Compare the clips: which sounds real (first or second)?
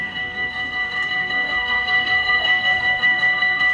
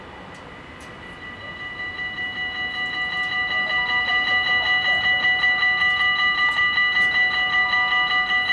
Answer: second